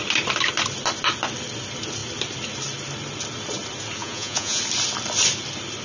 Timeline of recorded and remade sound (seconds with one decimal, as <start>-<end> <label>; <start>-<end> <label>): 0.0-4.0 recorded; 4.0-4.6 remade; 4.6-5.8 recorded